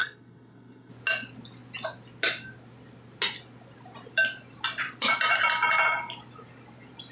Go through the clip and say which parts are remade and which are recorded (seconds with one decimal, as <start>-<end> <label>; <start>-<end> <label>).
0.0-0.9 remade; 0.9-7.1 recorded